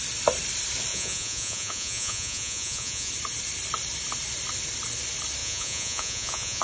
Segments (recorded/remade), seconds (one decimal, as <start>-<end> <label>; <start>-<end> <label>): 0.0-0.9 recorded; 0.9-3.1 remade; 3.1-5.4 recorded; 5.4-6.6 remade